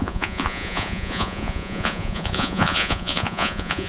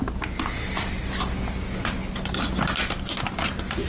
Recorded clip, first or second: second